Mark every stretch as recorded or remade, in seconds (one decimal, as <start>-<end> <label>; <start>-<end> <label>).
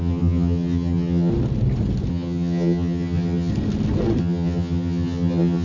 0.0-1.3 remade; 1.3-2.1 recorded; 2.1-3.5 remade; 3.5-4.2 recorded; 4.2-5.6 remade